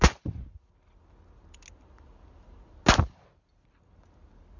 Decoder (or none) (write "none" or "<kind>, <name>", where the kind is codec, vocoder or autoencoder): none